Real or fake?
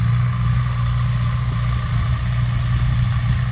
real